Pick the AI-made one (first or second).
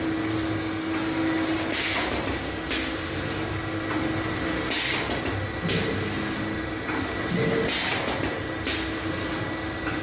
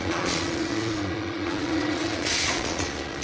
second